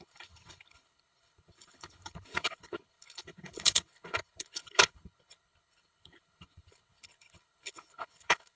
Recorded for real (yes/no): no